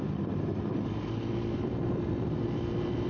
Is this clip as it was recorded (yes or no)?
yes